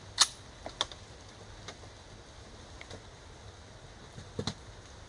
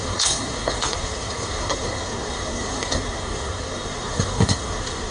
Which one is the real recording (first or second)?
first